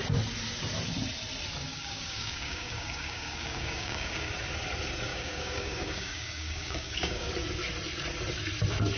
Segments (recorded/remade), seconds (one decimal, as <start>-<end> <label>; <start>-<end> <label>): 0.0-1.7 recorded; 1.7-4.3 remade; 4.3-5.1 recorded; 5.1-7.3 remade; 7.3-9.0 recorded